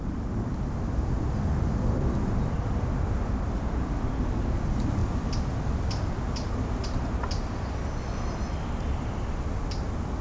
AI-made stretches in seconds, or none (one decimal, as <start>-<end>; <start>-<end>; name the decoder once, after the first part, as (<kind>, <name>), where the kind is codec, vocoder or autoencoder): none